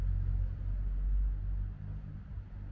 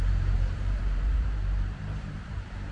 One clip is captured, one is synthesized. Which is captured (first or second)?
first